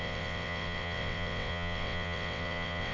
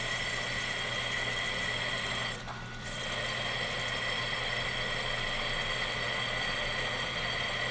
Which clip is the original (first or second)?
second